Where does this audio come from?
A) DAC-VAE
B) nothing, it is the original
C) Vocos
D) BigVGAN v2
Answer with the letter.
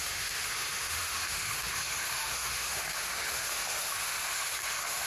A